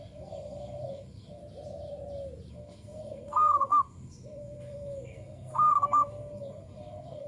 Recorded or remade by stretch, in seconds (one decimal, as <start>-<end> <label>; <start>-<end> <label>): 0.0-1.4 remade; 1.4-2.5 recorded; 2.5-7.3 remade